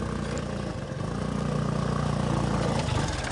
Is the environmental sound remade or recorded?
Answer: recorded